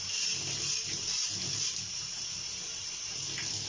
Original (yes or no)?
yes